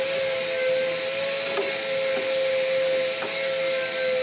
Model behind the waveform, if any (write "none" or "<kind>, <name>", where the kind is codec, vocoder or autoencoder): none